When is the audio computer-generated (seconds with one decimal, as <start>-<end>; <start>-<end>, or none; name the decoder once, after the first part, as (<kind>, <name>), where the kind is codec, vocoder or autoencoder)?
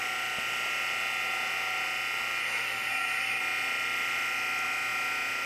2.4-3.4 (codec, SNAC)